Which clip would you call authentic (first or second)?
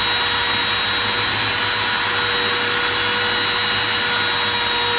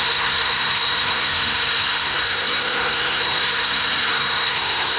first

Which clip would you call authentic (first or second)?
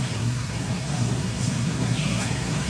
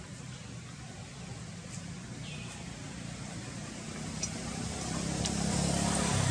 second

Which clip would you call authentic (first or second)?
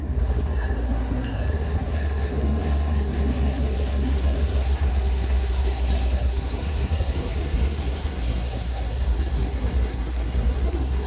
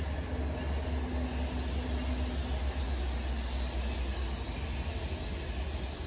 second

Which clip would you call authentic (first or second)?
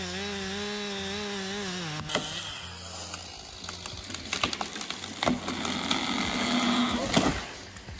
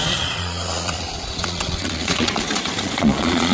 first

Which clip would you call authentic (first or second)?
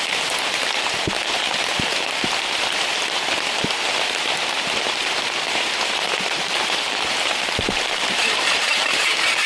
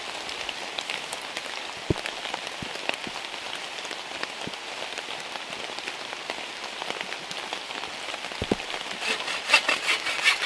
second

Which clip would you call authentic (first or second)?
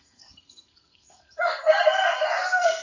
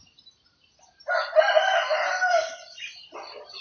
second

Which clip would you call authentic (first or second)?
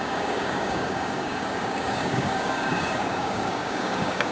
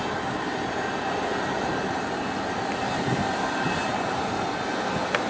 second